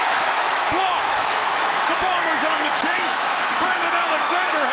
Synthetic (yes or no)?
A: yes